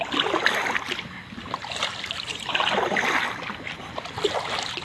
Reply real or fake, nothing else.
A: real